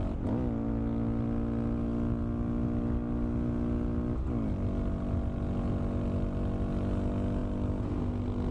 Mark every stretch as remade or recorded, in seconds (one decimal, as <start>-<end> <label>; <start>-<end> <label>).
0.0-8.5 recorded

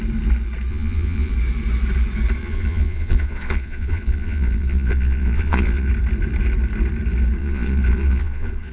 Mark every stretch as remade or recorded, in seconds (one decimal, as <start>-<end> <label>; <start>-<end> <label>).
0.0-0.7 recorded; 0.7-1.3 remade; 1.3-2.4 recorded; 2.4-5.9 remade; 5.9-7.4 recorded; 7.4-8.7 remade

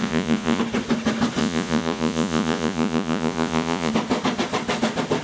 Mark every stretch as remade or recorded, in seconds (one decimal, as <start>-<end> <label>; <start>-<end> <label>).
0.0-0.6 remade; 0.6-1.4 recorded; 1.4-3.9 remade; 3.9-5.2 recorded

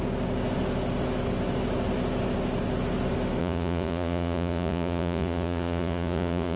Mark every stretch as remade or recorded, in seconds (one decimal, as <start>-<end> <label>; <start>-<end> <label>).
0.0-3.4 recorded; 3.4-6.6 remade

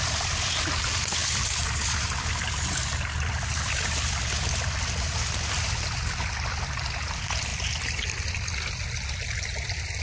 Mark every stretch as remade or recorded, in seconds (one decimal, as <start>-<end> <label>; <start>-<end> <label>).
0.0-10.0 recorded

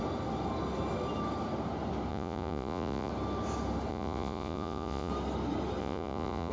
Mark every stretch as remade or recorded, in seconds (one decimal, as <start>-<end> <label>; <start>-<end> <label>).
0.0-2.1 recorded; 2.1-3.1 remade; 3.1-3.9 recorded; 3.9-5.1 remade; 5.1-5.8 recorded; 5.8-6.5 remade

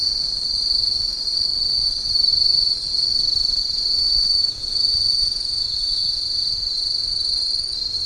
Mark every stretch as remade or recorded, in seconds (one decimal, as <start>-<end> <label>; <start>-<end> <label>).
0.0-3.4 recorded; 3.4-7.0 remade; 7.0-8.1 recorded